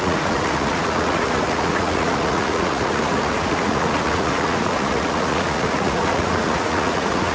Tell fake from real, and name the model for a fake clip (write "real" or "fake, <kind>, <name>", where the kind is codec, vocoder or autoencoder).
fake, vocoder, Vocos